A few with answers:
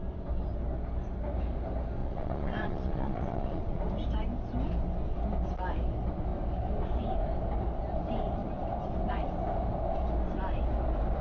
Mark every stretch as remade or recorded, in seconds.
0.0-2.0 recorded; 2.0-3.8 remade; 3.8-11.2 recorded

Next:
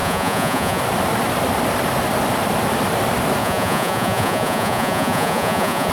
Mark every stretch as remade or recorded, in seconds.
0.0-0.8 remade; 0.8-3.4 recorded; 3.4-5.9 remade

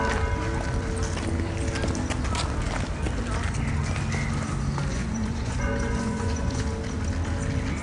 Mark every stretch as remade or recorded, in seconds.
0.0-4.9 recorded; 4.9-6.6 remade; 6.6-7.8 recorded

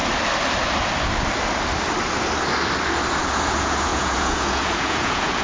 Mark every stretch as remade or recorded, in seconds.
0.0-3.2 recorded; 3.2-5.4 remade

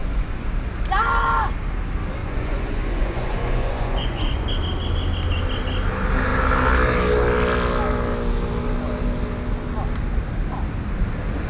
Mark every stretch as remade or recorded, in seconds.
0.0-0.5 remade; 0.5-2.2 recorded; 2.2-4.5 remade; 4.5-11.5 recorded

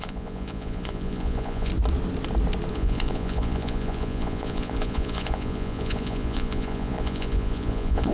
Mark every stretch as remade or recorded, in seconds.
0.0-1.7 remade; 1.7-2.7 recorded; 2.7-8.1 remade

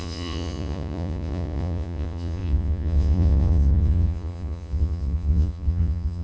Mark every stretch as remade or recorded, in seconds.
0.0-6.2 remade